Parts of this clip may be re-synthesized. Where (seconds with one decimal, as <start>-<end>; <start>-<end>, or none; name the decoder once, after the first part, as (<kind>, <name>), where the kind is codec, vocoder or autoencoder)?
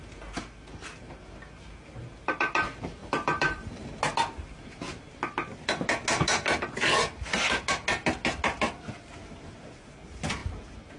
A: 3.0-4.0 (vocoder, BigVGAN v2)